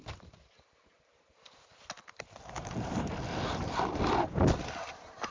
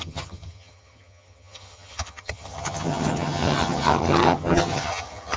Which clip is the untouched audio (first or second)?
first